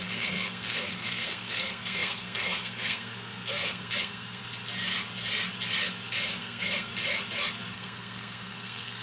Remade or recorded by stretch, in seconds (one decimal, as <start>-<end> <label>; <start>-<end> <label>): 0.0-4.4 remade; 4.4-6.4 recorded; 6.4-6.9 remade; 6.9-7.6 recorded; 7.6-9.0 remade